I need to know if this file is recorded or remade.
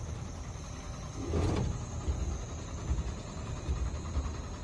recorded